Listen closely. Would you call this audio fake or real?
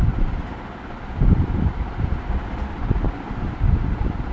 real